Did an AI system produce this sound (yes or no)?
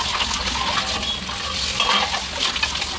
no